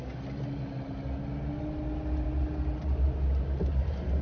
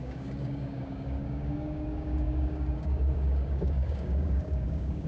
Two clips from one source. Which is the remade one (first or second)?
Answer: second